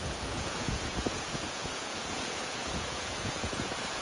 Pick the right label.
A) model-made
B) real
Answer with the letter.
A